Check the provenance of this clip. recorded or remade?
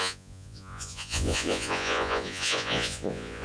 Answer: remade